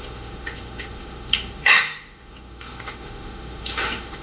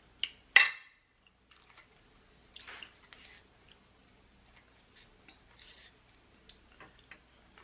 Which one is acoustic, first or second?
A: second